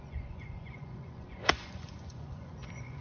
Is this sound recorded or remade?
remade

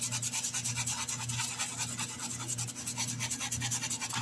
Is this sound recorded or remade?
recorded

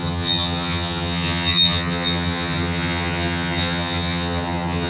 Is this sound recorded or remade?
remade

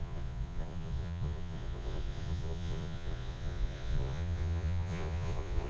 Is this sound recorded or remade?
remade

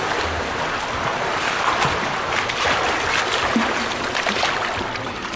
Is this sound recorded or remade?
recorded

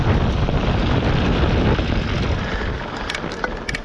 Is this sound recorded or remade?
recorded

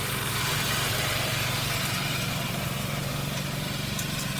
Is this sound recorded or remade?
remade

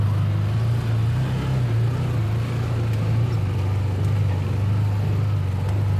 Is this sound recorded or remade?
recorded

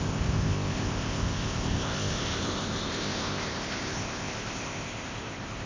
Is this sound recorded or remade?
remade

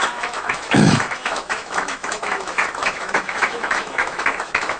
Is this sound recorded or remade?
remade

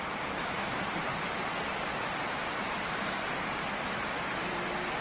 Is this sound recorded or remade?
recorded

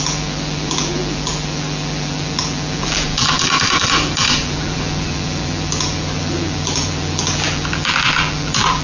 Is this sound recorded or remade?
remade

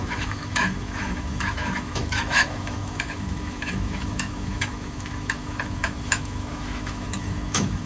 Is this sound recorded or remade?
remade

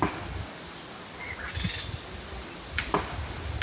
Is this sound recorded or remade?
recorded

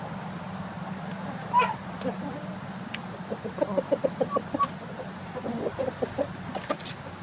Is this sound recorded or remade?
recorded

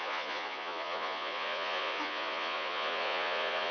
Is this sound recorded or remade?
remade